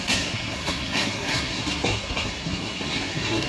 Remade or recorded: remade